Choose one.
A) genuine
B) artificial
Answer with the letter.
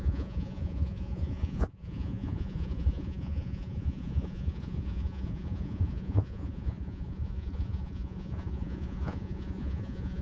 B